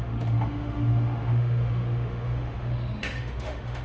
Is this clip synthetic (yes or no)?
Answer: yes